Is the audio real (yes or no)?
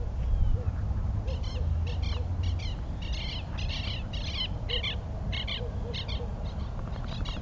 yes